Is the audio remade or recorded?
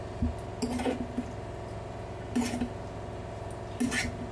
recorded